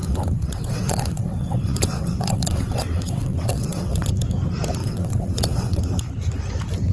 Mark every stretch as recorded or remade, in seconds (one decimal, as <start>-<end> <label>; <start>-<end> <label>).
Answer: 0.0-4.1 remade; 4.1-4.8 recorded; 4.8-5.8 remade; 5.8-6.9 recorded